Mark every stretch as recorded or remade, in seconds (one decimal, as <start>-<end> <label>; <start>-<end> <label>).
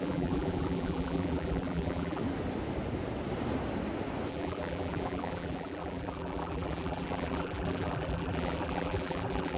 0.0-2.2 remade; 2.2-4.3 recorded; 4.3-9.6 remade